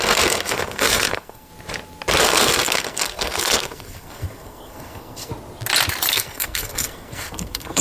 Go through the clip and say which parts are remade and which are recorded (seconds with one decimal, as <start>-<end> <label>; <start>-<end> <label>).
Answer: 0.0-1.5 remade; 1.5-2.2 recorded; 2.2-5.3 remade; 5.3-6.1 recorded; 6.1-7.8 remade